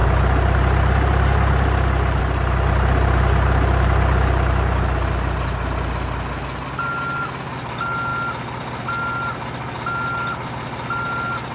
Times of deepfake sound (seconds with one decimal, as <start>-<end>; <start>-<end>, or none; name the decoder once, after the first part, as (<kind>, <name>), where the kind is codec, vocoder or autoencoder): none